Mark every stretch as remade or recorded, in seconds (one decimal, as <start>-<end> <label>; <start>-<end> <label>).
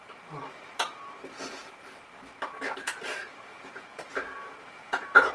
0.0-3.5 recorded; 3.5-5.3 remade